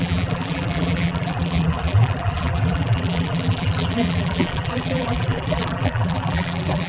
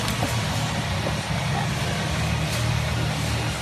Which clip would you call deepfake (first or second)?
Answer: first